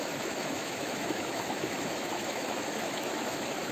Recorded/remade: remade